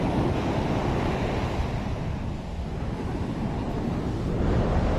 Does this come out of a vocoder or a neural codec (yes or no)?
no